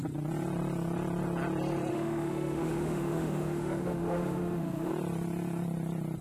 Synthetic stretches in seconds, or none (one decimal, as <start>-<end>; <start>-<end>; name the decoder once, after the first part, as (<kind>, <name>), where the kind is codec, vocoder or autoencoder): 1.9-4.9 (autoencoder, DAC-VAE)